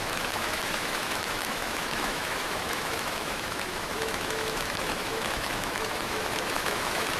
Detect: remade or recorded remade